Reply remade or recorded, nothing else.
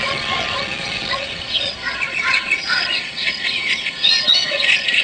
remade